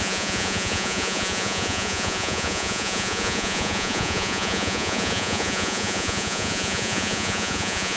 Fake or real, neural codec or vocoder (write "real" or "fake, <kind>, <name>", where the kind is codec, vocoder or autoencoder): fake, vocoder, Vocos